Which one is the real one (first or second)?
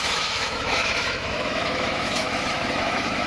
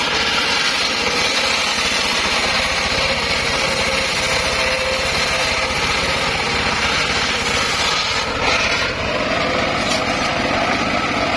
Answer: second